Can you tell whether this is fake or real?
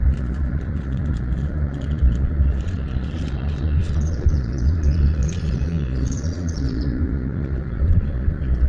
fake